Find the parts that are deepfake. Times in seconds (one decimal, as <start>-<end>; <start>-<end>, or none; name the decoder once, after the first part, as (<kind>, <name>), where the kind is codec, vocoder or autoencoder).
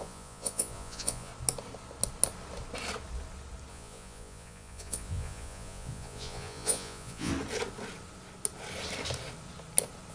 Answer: 0.0-1.3 (vocoder, Vocos); 3.7-7.3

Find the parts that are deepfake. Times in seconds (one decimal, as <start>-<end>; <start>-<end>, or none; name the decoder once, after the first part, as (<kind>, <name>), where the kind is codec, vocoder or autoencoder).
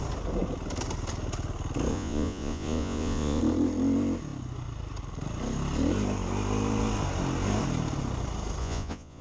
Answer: 1.9-3.4 (vocoder, Vocos); 8.6-9.2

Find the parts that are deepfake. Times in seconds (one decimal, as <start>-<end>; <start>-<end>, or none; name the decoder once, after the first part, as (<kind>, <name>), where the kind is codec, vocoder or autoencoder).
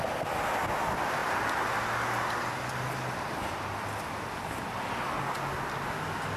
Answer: none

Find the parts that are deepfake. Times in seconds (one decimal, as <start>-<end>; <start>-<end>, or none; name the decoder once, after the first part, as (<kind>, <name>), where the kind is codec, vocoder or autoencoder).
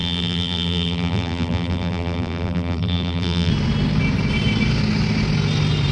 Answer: 0.0-3.5 (vocoder, BigVGAN v2)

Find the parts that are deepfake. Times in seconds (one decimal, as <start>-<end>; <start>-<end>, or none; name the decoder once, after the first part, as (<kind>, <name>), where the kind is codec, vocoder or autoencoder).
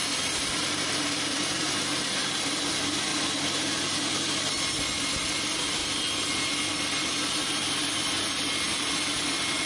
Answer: 0.0-1.7 (vocoder, BigVGAN v2)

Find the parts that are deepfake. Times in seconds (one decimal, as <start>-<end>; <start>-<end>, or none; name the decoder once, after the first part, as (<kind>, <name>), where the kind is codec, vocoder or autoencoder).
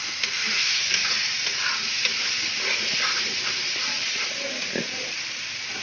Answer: 0.4-1.1 (autoencoder, DAC-VAE)